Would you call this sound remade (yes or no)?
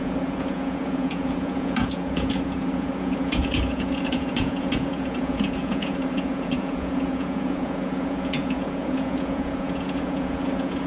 yes